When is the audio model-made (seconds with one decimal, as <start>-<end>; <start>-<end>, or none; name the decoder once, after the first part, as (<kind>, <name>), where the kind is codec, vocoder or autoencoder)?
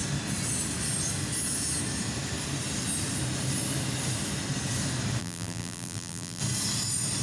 5.2-6.4 (vocoder, BigVGAN v2)